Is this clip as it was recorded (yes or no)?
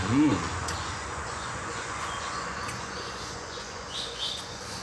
no